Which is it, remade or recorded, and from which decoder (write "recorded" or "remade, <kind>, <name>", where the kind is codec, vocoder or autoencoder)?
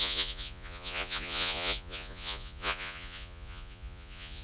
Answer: remade, vocoder, Vocos